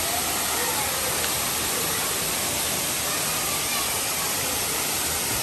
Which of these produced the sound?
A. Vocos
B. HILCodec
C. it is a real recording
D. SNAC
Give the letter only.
C